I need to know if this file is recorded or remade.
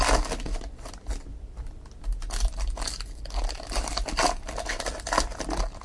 recorded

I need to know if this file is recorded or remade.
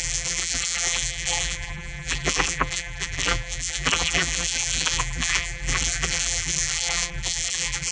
remade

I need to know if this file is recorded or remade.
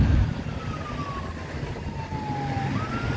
recorded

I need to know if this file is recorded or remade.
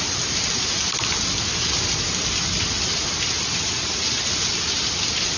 recorded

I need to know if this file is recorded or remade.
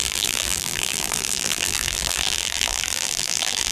remade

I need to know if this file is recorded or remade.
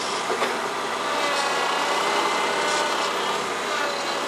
recorded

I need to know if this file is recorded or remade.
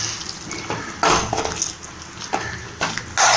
recorded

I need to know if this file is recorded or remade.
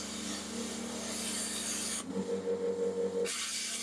recorded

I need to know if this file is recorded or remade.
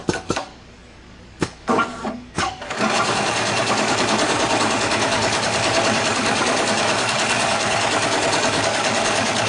remade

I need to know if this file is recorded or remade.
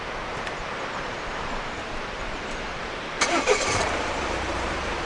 remade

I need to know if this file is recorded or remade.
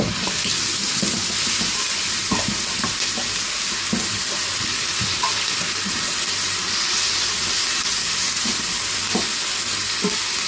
recorded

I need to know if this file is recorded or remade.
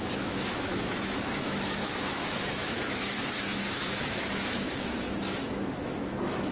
remade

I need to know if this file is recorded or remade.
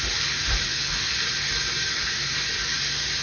recorded